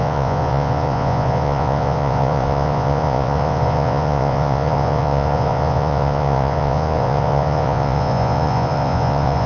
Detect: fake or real fake